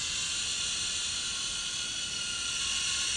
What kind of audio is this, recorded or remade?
recorded